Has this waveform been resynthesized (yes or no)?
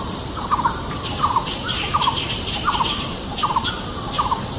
yes